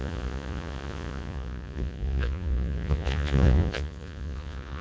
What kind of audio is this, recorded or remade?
remade